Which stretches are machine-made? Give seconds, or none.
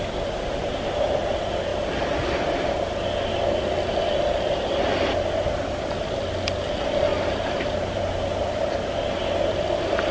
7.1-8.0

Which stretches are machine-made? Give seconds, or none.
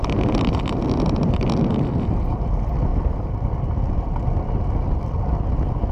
none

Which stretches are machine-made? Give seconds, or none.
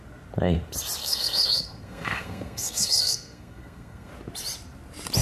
1.0-4.1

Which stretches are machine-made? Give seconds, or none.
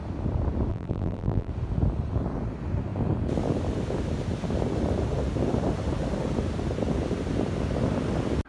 0.7-1.5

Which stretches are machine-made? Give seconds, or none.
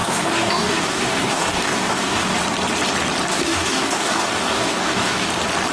0.0-2.4; 3.3-5.3